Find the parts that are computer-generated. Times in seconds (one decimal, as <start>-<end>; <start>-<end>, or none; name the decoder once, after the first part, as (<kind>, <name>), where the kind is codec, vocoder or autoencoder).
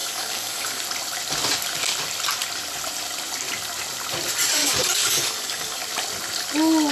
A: 0.0-0.8 (codec, DAC); 4.6-5.8